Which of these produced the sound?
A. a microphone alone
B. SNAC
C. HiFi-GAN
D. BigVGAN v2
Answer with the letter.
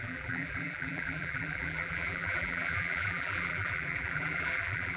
D